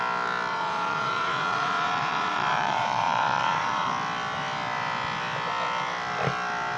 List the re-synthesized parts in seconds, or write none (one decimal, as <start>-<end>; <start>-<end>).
0.5-3.9